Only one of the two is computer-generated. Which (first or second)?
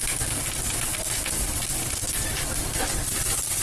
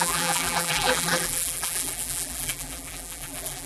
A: second